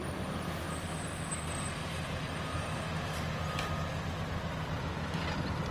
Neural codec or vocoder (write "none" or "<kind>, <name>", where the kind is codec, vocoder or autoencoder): none